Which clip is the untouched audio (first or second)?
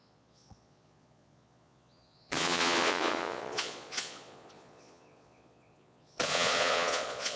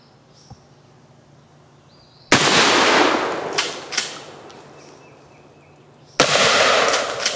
second